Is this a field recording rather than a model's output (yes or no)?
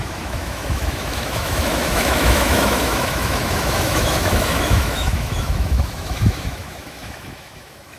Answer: no